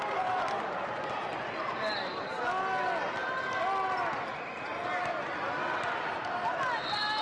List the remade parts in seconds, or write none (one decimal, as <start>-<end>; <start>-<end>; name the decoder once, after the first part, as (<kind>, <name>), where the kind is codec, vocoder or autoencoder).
none